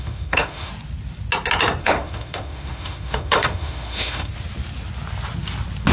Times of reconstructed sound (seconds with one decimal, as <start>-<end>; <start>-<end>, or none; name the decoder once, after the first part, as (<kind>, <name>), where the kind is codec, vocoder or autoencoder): 0.0-0.7 (autoencoder, DAC-VAE); 1.8-4.3